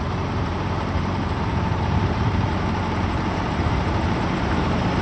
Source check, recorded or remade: remade